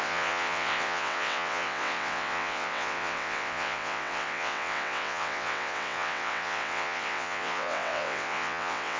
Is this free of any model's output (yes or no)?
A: no